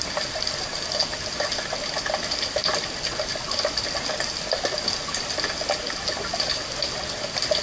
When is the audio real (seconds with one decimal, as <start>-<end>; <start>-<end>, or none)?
0.0-7.6